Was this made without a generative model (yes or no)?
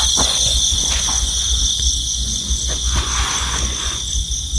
no